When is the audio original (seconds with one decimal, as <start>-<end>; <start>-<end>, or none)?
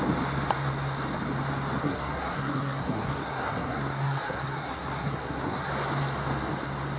0.0-1.8; 5.7-7.0